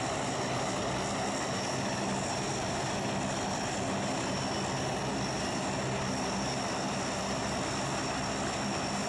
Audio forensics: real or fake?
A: real